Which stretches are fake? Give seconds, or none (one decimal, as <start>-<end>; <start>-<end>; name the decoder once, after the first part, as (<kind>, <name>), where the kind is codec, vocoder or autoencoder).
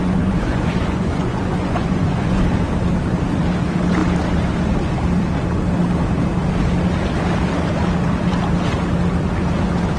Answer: 0.0-2.4 (vocoder, Vocos)